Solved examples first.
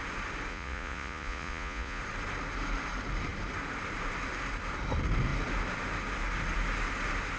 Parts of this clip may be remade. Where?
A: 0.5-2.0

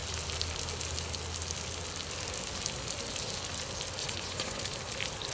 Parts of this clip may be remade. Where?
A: 4.0-4.6